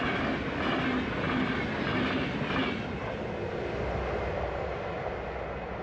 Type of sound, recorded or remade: recorded